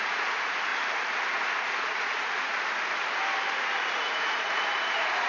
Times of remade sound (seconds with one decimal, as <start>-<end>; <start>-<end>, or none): 0.0-0.7; 1.3-2.5; 3.8-5.3